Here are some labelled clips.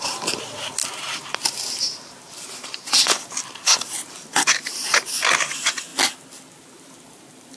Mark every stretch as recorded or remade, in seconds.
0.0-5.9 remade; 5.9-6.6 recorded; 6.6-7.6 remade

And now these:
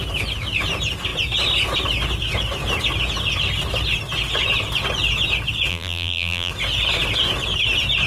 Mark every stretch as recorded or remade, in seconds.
0.0-5.7 recorded; 5.7-6.5 remade; 6.5-8.1 recorded

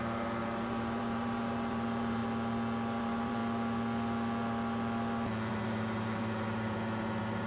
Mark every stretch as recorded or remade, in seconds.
0.0-2.2 remade; 2.2-3.0 recorded; 3.0-3.4 remade; 3.4-5.5 recorded; 5.5-7.5 remade

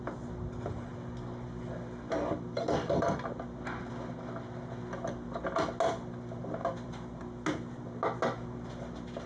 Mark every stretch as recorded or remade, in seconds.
0.0-6.6 recorded; 6.6-7.2 remade; 7.2-9.3 recorded

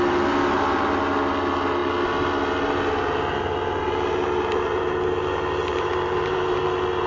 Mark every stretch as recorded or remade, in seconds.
0.0-5.7 recorded; 5.7-6.6 remade; 6.6-7.1 recorded